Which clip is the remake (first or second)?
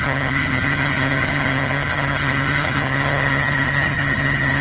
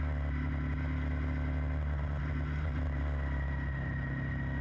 first